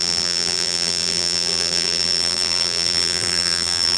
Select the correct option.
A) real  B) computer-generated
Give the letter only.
B